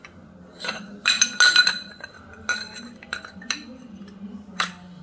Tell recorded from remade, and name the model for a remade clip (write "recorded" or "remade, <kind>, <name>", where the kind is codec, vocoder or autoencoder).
recorded